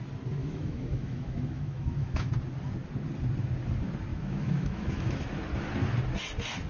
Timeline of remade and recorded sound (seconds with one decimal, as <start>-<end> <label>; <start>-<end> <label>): 0.0-0.4 recorded; 0.4-2.3 remade; 2.3-4.1 recorded; 4.1-5.2 remade; 5.2-6.7 recorded